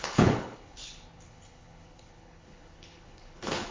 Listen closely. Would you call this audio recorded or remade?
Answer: remade